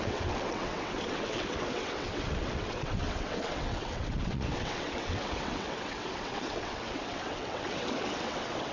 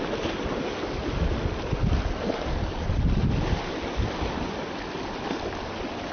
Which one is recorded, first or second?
second